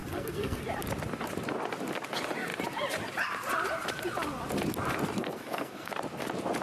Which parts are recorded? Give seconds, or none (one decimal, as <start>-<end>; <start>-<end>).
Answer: 0.6-5.2; 5.9-6.6